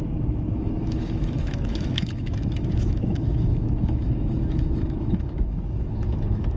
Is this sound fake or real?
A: fake